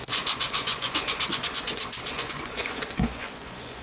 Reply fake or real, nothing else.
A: fake